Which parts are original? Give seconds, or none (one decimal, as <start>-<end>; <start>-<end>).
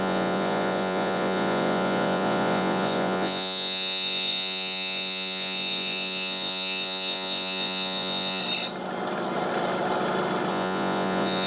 8.4-10.5